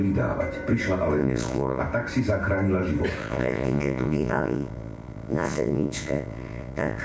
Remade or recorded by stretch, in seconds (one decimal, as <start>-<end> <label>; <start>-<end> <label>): 0.0-1.2 recorded; 1.2-1.8 remade; 1.8-3.2 recorded; 3.2-7.0 remade